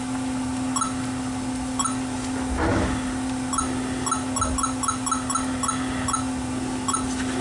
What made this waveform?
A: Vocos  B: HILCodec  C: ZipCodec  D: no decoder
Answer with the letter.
D